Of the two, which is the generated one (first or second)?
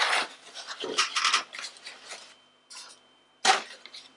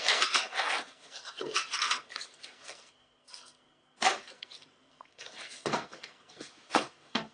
second